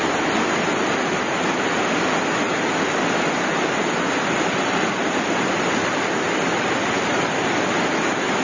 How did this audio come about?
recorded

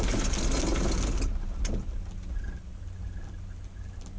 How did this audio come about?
recorded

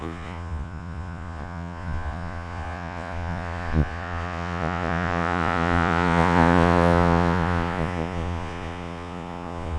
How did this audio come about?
remade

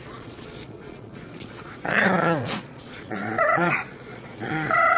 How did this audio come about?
remade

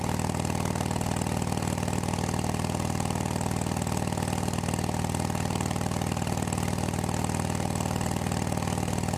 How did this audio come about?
recorded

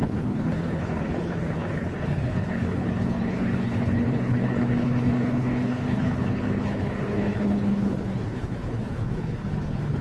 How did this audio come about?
remade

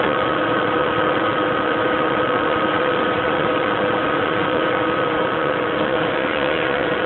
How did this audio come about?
remade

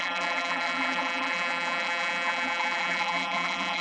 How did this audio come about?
remade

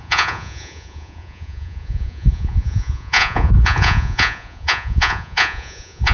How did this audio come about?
remade